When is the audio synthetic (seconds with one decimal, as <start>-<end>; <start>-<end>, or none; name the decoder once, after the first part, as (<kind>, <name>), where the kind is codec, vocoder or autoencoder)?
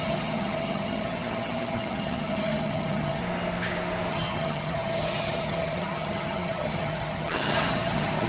0.0-3.2 (vocoder, HiFi-GAN); 4.1-8.3